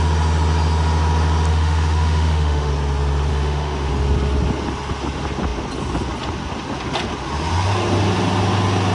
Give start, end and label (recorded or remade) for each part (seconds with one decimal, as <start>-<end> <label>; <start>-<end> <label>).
0.0-1.5 recorded; 1.5-2.7 remade; 2.7-3.3 recorded; 3.3-3.9 remade; 3.9-8.9 recorded